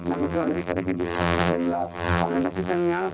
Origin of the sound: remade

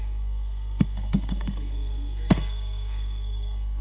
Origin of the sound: remade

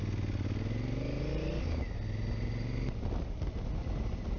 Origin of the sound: recorded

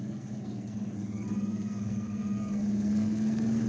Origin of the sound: remade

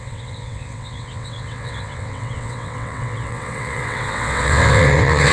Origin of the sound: remade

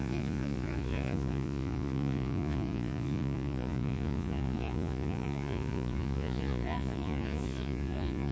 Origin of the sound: remade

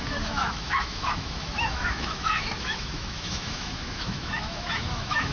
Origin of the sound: remade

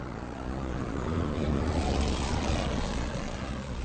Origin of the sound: remade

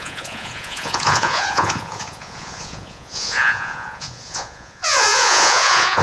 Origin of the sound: remade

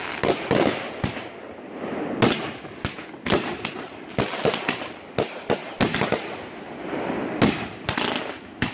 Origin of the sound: recorded